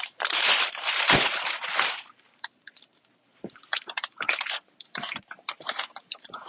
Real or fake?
fake